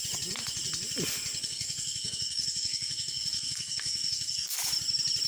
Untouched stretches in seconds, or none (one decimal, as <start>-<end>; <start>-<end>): 0.0-1.4; 4.6-5.3